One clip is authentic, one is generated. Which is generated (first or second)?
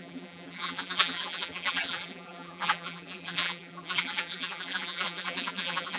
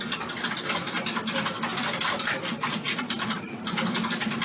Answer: first